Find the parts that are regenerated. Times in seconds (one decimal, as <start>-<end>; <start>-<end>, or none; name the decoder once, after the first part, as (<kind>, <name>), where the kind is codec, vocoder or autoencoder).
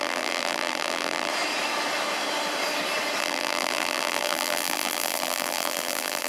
0.0-1.3 (vocoder, BigVGAN v2); 3.2-6.3